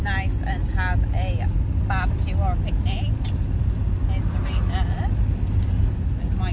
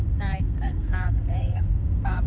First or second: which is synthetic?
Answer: second